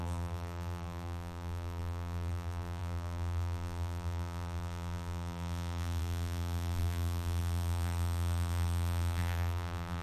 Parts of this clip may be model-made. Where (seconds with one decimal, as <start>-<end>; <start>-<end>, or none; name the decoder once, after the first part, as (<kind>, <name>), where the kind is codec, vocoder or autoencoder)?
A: 0.0-10.0 (vocoder, BigVGAN v2)